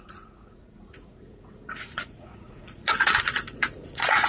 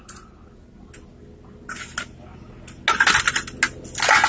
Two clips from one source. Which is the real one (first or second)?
second